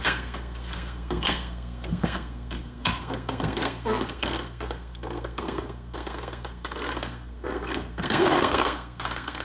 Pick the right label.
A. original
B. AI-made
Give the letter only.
B